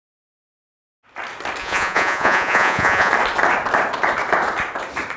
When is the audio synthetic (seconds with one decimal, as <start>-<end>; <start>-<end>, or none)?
1.6-3.1

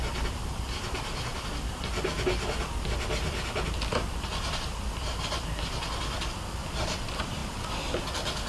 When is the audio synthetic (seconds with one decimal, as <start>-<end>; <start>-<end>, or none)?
none

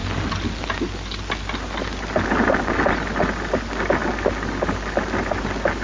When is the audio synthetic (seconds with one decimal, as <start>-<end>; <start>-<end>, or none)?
none

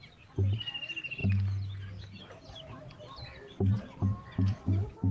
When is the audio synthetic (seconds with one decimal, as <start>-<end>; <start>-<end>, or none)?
none

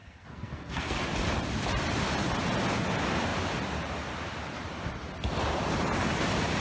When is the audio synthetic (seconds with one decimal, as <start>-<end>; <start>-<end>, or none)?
0.0-1.0

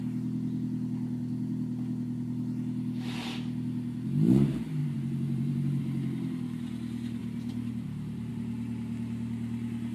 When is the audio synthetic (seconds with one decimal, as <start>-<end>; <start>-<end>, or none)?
4.8-5.8; 7.2-8.3

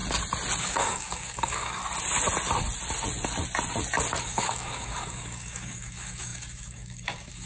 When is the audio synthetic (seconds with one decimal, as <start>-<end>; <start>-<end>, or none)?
0.6-1.8; 4.2-7.5